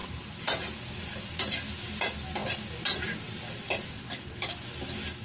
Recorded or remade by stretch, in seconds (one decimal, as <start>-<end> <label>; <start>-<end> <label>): 0.0-2.0 remade; 2.0-5.2 recorded